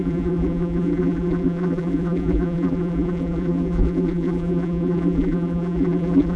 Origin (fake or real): fake